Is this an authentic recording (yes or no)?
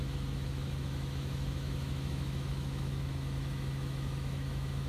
no